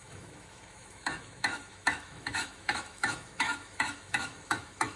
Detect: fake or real fake